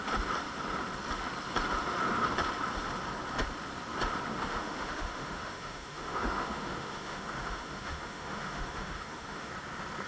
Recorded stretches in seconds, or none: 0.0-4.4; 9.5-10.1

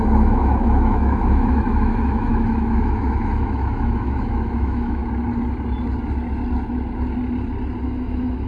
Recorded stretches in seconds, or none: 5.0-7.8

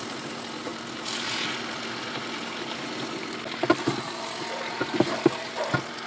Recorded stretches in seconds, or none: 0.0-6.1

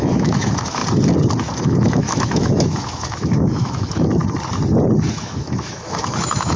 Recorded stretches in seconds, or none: 0.8-1.6; 4.2-5.1

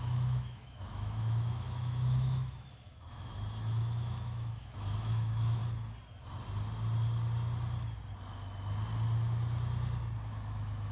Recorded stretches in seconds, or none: 5.6-10.3

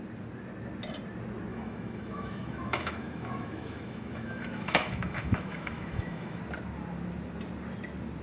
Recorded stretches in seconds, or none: 0.0-1.5; 6.4-8.2